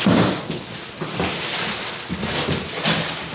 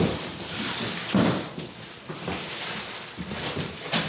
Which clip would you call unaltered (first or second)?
first